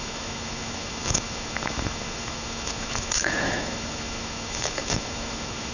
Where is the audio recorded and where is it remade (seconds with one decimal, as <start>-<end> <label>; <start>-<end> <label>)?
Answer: 0.0-5.7 remade